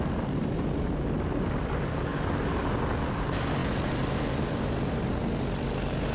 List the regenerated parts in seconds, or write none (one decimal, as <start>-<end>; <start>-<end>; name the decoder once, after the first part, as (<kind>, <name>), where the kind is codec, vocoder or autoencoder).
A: none